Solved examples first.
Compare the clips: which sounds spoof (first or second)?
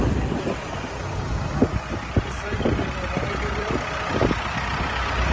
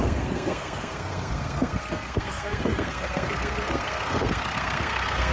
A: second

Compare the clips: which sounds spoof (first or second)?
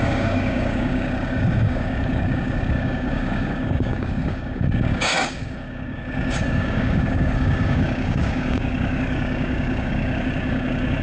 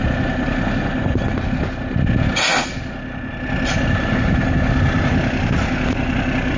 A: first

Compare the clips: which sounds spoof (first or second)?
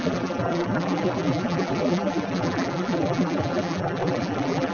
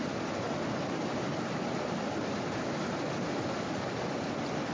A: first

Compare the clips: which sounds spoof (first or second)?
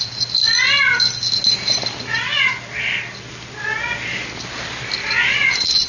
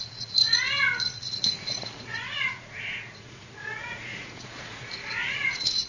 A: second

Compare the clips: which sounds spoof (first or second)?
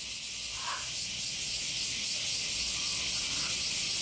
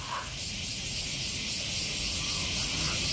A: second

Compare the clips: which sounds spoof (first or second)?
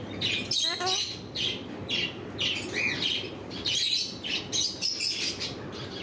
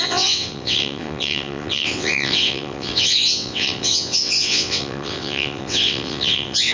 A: second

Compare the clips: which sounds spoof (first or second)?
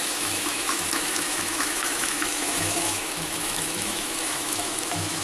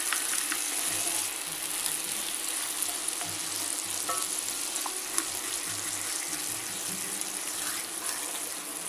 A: first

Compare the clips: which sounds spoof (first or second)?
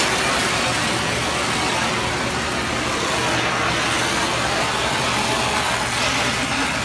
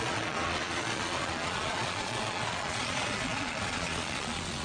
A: second